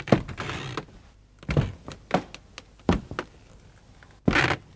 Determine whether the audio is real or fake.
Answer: real